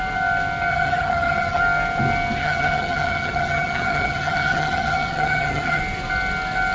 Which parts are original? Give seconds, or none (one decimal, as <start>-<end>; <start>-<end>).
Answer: 0.0-0.7; 1.6-2.4; 5.8-6.7